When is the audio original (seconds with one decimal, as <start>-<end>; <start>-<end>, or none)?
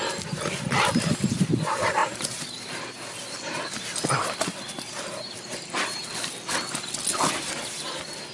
0.0-2.0; 2.8-8.3